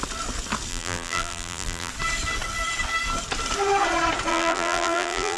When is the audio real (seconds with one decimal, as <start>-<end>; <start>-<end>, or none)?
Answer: 0.0-0.7; 1.9-4.3